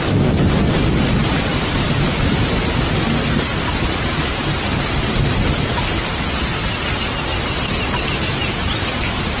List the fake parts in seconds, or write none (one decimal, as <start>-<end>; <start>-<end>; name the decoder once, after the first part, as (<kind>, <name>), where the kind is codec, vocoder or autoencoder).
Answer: 1.5-2.1 (vocoder, BigVGAN v2)